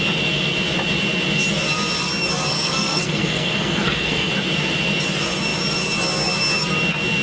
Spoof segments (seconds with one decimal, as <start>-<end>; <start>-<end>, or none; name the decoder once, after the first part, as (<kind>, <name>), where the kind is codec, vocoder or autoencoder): 2.5-4.3 (codec, SNAC)